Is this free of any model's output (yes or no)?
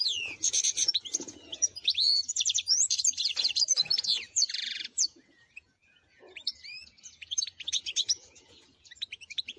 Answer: no